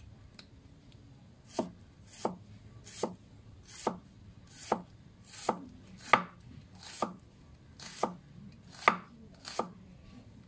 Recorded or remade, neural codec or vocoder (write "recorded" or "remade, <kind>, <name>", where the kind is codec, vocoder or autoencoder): recorded